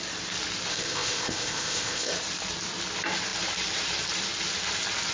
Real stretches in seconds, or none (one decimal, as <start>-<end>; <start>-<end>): 0.0-0.7; 2.1-5.1